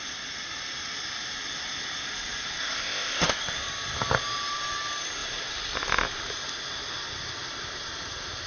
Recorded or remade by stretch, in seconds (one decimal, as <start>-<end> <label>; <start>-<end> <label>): 0.0-2.6 recorded; 2.6-3.4 remade; 3.4-8.5 recorded